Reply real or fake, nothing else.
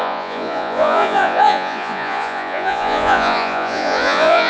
fake